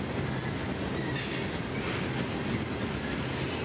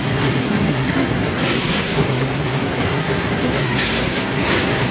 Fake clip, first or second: second